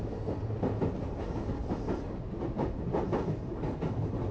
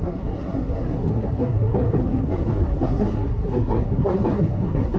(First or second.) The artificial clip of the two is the second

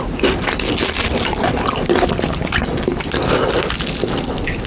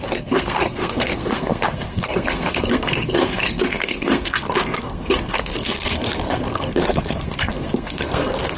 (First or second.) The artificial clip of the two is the second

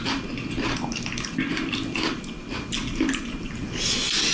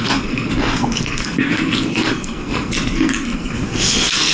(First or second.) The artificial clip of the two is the second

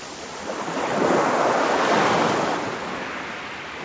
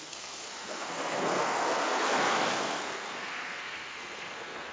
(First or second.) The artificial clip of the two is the second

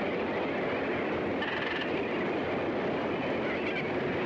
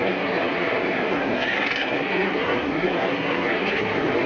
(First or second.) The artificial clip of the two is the second